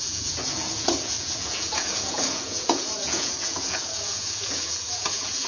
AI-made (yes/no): yes